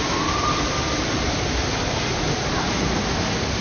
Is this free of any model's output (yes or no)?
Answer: yes